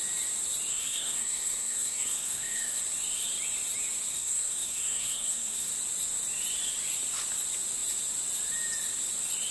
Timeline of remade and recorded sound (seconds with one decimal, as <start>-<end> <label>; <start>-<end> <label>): 0.0-0.7 recorded; 0.7-2.8 remade; 2.8-4.1 recorded; 4.1-5.7 remade; 5.7-9.5 recorded